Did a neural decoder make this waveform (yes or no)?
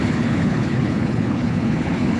yes